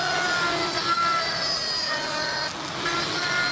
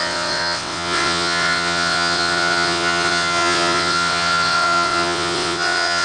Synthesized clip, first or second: second